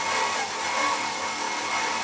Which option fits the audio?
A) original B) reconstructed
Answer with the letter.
A